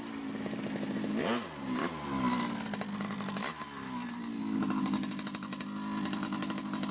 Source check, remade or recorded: recorded